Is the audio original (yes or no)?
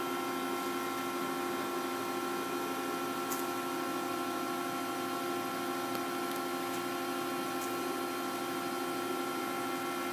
yes